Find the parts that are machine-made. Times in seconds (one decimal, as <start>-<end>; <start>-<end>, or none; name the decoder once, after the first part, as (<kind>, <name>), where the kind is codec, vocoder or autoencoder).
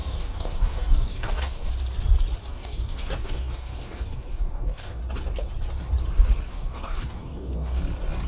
0.0-1.7 (codec, DAC); 2.4-5.0; 6.5-7.8